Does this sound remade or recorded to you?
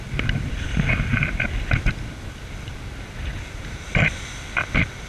recorded